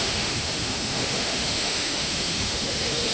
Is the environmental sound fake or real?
fake